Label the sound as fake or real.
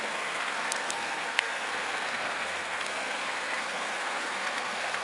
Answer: fake